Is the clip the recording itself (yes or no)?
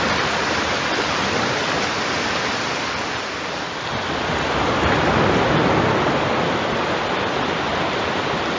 yes